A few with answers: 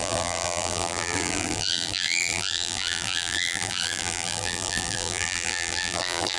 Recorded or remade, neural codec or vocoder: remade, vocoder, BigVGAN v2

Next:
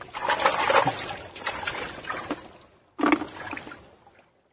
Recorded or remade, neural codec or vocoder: recorded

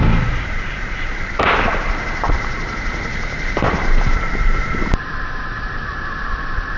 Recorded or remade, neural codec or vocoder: remade, vocoder, BigVGAN v2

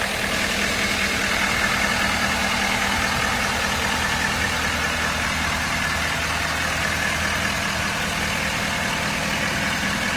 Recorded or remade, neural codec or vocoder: recorded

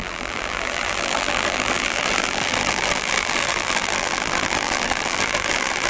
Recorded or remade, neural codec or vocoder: remade, vocoder, BigVGAN v2